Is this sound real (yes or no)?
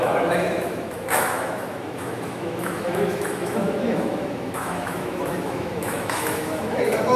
no